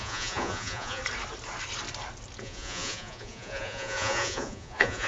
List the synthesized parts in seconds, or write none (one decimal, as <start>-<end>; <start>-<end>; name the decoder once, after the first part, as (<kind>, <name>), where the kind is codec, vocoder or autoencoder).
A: 0.0-1.0 (vocoder, Vocos); 2.4-5.1